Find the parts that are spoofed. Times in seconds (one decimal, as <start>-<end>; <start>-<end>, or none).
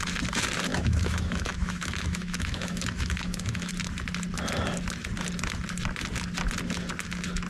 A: 0.7-3.7